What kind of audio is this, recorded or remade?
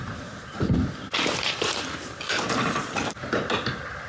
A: remade